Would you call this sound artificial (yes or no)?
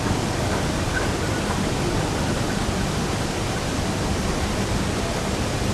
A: yes